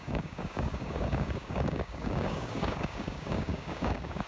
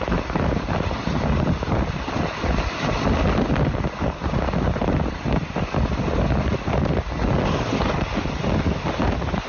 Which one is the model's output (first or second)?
first